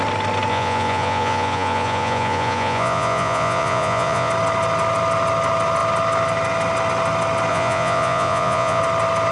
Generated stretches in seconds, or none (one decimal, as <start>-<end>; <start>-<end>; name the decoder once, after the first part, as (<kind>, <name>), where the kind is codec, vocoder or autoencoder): 0.5-4.3 (vocoder, Vocos); 7.5-8.8